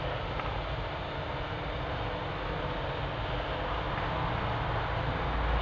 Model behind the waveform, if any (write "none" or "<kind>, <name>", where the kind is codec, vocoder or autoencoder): none